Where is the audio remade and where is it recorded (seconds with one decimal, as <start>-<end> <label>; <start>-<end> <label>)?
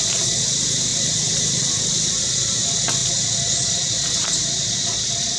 0.0-5.4 recorded